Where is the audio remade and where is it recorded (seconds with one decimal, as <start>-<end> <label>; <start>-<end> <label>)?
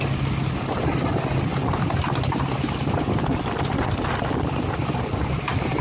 0.0-5.8 recorded